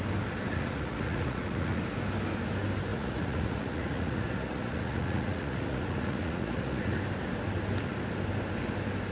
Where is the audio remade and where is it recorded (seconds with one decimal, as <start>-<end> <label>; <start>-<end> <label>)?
0.0-0.5 recorded; 0.5-1.8 remade; 1.8-2.9 recorded; 2.9-7.0 remade; 7.0-9.1 recorded